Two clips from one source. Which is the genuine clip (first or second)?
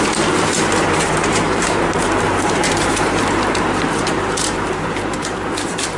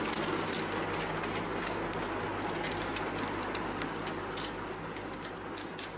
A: second